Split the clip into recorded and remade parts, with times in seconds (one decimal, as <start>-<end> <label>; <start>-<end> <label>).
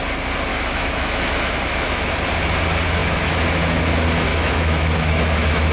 0.0-0.5 recorded; 0.5-2.1 remade; 2.1-4.3 recorded; 4.3-5.7 remade